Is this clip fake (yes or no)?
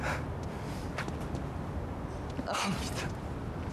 no